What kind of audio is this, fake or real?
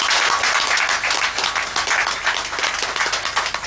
real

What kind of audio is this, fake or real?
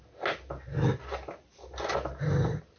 real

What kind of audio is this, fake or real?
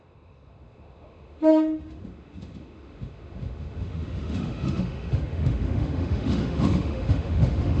fake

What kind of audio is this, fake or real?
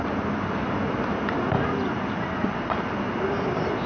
real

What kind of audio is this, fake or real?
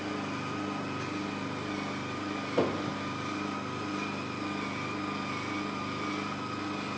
real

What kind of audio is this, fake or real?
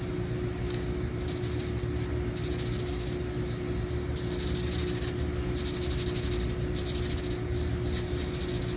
real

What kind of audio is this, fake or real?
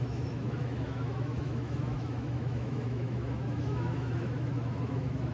fake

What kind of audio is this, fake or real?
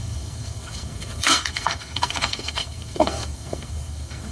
fake